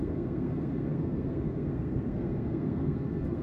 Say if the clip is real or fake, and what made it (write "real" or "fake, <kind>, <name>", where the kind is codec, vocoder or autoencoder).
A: fake, codec, SNAC